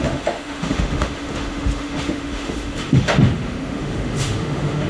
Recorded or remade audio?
remade